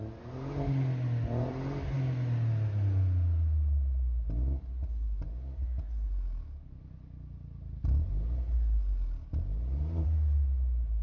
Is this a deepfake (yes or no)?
no